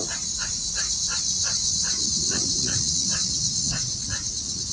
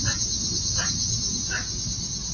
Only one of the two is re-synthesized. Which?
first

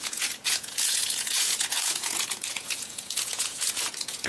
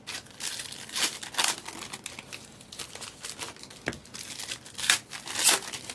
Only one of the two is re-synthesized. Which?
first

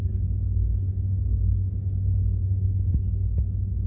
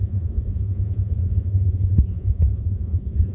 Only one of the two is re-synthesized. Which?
second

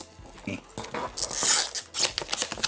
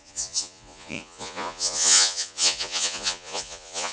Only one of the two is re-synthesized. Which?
second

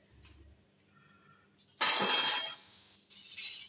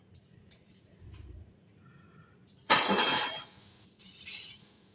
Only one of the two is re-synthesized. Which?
second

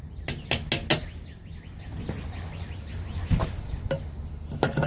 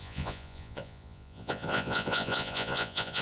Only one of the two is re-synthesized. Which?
second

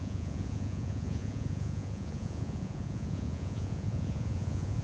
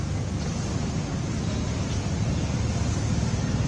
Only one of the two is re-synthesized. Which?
first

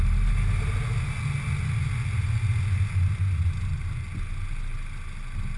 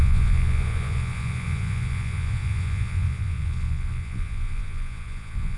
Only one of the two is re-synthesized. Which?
second